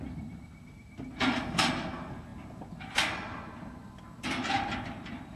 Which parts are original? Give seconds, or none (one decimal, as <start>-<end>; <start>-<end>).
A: 0.0-5.4